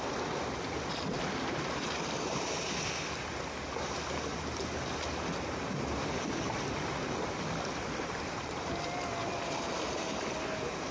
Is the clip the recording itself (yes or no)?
yes